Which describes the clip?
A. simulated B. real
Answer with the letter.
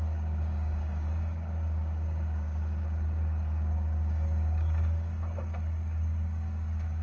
A